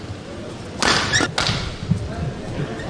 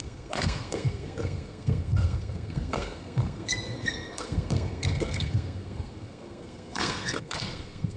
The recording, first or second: first